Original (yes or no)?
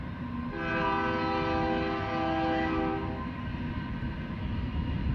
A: yes